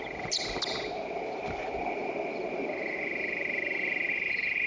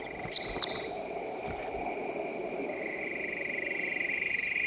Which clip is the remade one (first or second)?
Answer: second